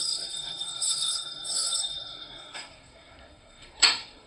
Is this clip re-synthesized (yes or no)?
yes